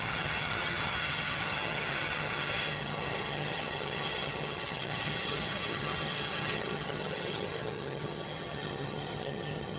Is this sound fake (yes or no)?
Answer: yes